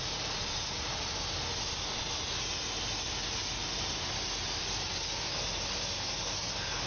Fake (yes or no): no